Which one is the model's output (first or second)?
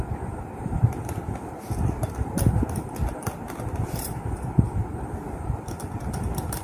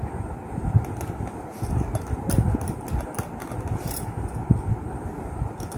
first